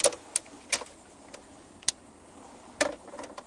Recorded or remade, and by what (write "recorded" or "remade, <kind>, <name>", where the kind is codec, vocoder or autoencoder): recorded